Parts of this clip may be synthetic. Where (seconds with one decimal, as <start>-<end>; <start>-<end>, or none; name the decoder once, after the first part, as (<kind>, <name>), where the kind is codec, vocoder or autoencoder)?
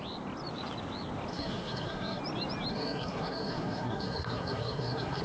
1.3-2.2 (codec, SNAC); 2.7-5.2